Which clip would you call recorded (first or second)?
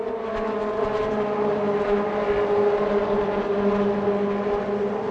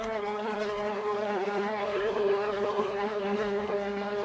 first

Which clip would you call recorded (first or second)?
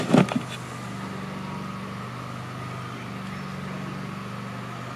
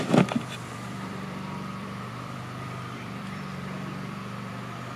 first